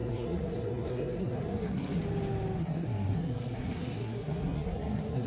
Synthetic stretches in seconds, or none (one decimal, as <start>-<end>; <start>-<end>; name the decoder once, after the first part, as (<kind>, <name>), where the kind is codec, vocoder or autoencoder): 0.0-2.0 (codec, SNAC); 2.6-5.3